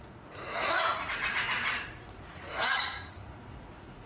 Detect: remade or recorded remade